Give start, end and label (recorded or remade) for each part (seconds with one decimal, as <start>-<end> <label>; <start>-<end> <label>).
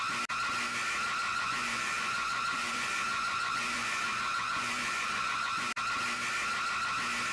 0.0-1.3 recorded; 1.3-5.7 remade; 5.7-7.3 recorded